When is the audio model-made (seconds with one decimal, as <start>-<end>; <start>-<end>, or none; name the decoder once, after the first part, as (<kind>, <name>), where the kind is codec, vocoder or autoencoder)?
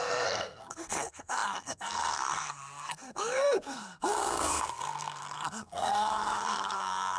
0.0-7.2 (codec, SNAC)